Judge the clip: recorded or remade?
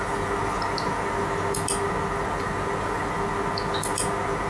recorded